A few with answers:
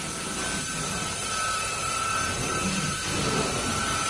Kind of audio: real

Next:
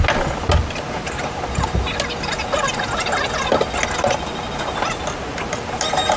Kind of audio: real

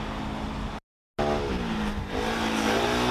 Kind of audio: real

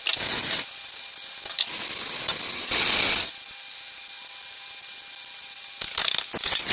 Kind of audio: real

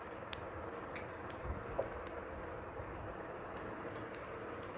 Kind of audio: real